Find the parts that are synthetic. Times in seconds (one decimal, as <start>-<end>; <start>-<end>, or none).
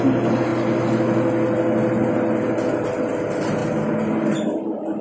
none